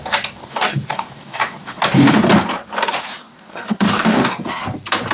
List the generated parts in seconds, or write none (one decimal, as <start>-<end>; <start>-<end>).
0.4-1.8; 3.2-4.5